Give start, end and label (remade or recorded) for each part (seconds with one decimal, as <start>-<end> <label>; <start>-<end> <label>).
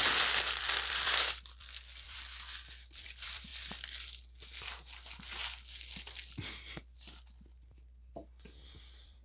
0.0-3.5 remade; 3.5-8.7 recorded; 8.7-9.2 remade